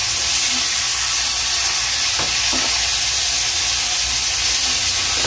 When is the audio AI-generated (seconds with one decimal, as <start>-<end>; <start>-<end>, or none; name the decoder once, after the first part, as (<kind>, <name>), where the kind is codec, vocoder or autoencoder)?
none